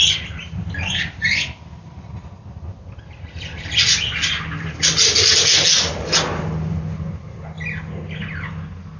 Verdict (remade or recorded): recorded